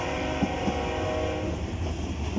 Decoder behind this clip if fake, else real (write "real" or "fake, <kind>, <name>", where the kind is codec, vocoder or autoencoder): real